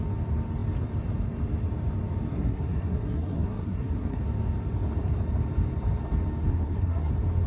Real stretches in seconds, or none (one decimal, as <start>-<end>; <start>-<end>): 0.0-2.3; 4.2-6.4; 7.1-7.5